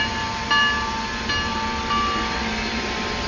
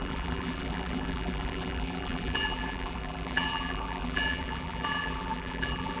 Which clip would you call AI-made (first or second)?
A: second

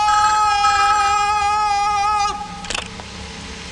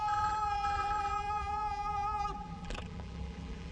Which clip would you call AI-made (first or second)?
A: second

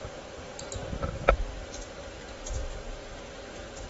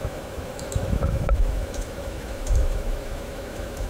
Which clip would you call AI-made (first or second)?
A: second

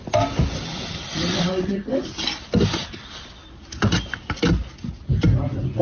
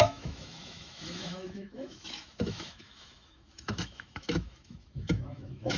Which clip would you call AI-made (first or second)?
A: second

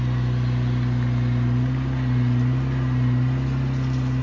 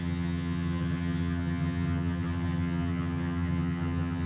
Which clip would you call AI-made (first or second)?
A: second